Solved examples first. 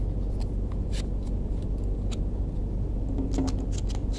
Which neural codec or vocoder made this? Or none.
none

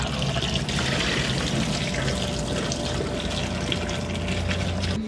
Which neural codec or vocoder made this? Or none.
none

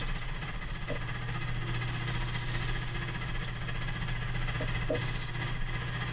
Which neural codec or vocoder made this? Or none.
none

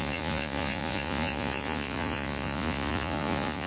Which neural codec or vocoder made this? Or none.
vocoder, Vocos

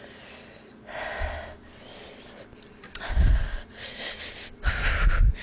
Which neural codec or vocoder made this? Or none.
none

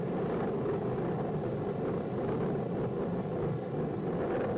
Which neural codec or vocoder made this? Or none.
none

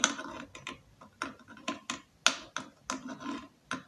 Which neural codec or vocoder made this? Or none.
none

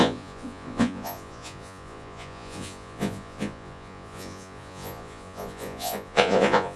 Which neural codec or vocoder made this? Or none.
vocoder, Vocos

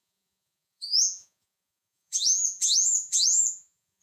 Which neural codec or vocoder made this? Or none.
vocoder, Vocos